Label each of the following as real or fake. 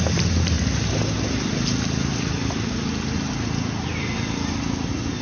real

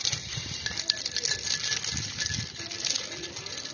real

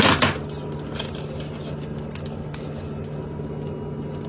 real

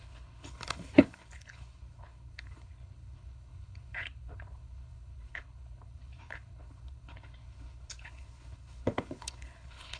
fake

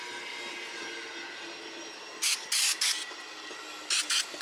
real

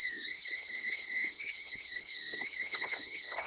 fake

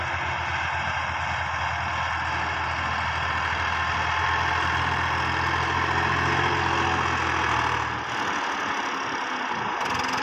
real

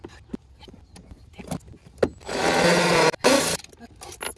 real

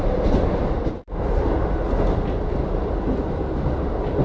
real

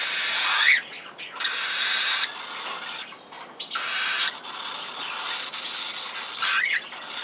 real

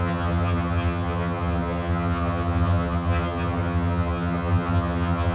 fake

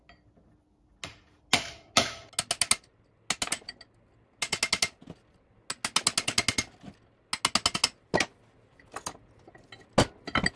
real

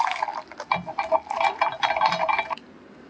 real